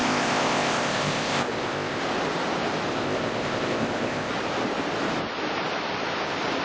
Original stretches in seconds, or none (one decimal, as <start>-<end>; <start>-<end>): 2.0-2.9; 4.3-6.6